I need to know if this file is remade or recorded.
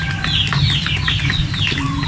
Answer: recorded